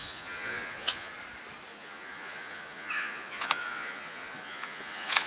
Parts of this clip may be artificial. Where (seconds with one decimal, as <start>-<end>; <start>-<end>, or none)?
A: 0.0-1.1; 1.7-5.3